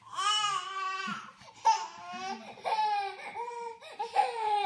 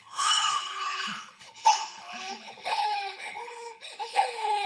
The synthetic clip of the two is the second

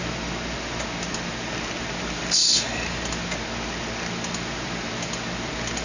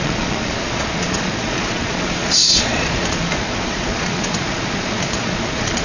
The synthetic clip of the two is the second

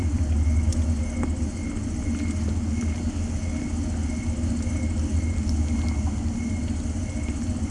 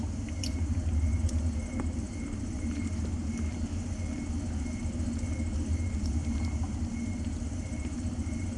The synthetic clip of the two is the second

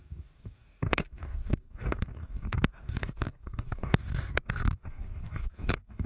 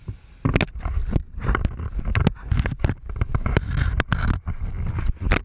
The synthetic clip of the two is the first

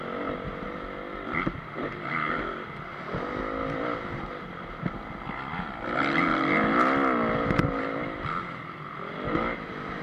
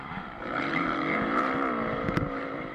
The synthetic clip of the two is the second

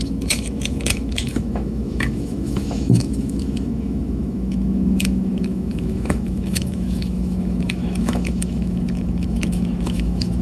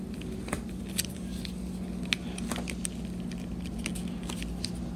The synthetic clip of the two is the first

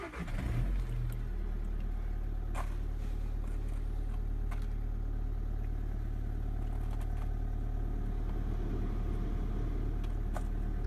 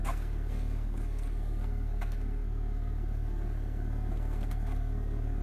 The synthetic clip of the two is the second